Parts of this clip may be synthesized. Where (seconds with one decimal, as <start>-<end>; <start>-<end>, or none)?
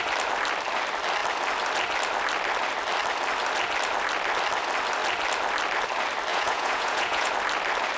6.3-7.3